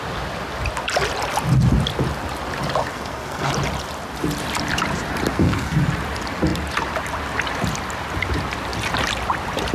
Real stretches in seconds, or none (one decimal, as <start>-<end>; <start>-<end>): 0.0-2.8; 3.5-5.3; 5.8-9.7